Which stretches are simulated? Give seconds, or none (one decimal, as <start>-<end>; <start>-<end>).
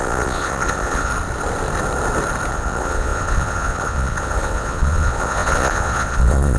0.0-1.1; 2.5-6.6